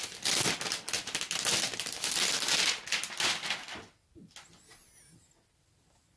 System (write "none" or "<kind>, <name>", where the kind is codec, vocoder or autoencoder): none